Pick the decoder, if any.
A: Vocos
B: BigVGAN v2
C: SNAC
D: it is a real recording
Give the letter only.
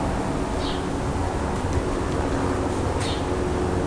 D